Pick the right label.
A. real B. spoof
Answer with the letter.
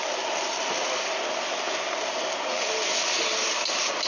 A